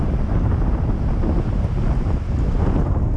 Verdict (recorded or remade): recorded